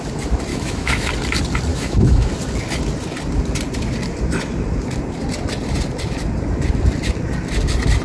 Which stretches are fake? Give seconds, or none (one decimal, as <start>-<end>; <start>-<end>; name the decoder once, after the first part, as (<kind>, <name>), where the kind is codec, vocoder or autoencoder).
0.5-1.1 (autoencoder, DAC-VAE); 1.7-2.3